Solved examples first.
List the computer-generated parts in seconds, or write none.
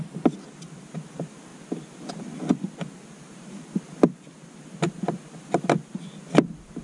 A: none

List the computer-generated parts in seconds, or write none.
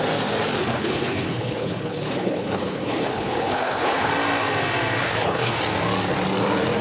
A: 0.6-4.1 (codec, HILCodec); 5.0-5.6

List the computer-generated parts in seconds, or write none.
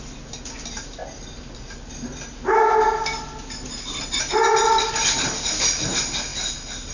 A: none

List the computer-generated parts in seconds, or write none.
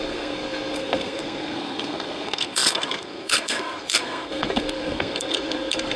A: 0.0-6.0 (codec, SNAC)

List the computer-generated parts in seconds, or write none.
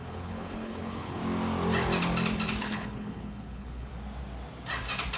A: 0.0-1.2 (codec, HILCodec); 2.6-3.9